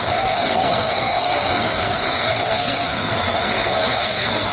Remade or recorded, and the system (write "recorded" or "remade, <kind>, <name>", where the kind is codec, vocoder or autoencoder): remade, codec, SNAC